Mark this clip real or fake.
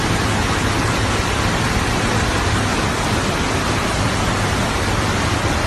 real